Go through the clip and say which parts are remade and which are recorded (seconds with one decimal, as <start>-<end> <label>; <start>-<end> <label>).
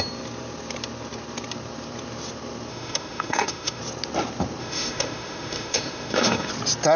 0.0-2.7 recorded; 2.7-3.8 remade; 3.8-4.6 recorded; 4.6-6.5 remade; 6.5-7.0 recorded